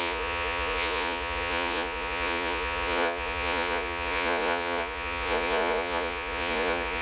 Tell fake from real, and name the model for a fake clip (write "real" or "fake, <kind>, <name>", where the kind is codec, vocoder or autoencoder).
fake, vocoder, Vocos